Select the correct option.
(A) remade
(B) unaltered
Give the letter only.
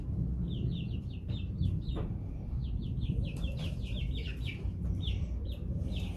B